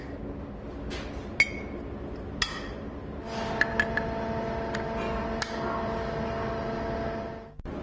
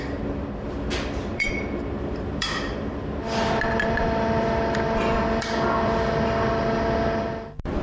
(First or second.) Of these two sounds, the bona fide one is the first